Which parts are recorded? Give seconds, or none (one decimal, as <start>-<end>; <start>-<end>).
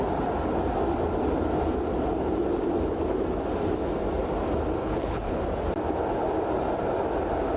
0.0-4.8; 5.4-7.6